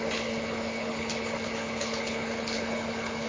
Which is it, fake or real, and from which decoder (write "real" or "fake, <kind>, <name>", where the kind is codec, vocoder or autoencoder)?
fake, codec, HILCodec